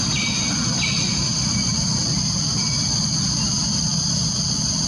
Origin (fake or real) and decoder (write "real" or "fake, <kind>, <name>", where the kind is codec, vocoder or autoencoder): real